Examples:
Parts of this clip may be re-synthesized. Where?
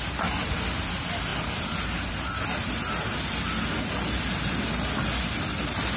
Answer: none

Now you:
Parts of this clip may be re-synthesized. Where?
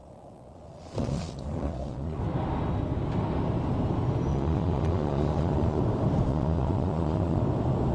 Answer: 0.0-2.2 (vocoder, Vocos); 4.3-5.8; 6.3-7.4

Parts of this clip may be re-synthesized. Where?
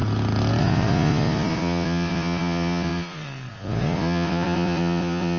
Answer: 0.6-5.4 (vocoder, Vocos)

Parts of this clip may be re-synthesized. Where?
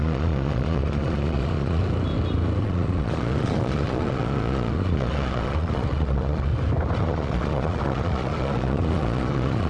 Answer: 0.0-1.8 (vocoder, Vocos); 2.6-6.5; 7.0-9.7